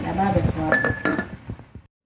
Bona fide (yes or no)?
yes